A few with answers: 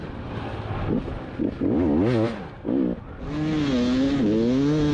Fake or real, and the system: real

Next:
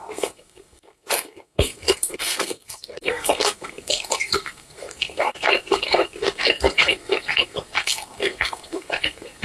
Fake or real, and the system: fake, codec, SNAC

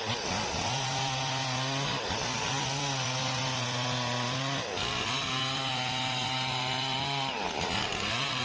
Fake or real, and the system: real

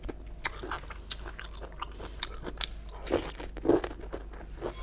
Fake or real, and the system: real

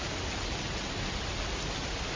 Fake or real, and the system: real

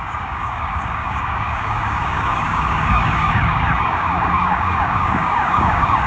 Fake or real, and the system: fake, codec, DAC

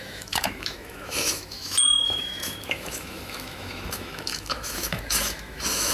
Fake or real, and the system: fake, autoencoder, DAC-VAE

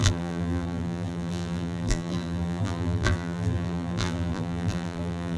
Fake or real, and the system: fake, vocoder, BigVGAN v2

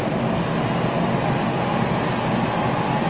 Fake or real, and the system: real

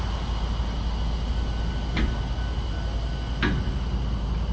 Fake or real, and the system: real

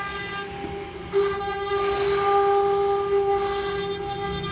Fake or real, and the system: real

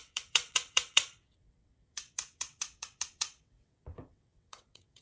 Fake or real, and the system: fake, vocoder, WaveNeXt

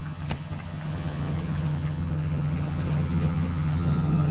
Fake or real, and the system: fake, vocoder, HiFi-GAN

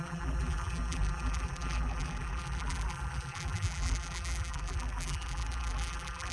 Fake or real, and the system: fake, vocoder, BigVGAN v2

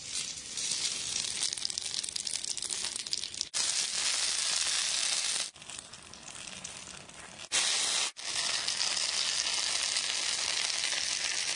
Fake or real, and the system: real